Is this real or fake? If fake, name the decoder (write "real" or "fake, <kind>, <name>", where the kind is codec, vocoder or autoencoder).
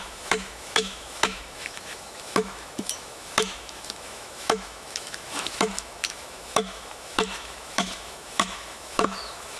fake, autoencoder, DAC-VAE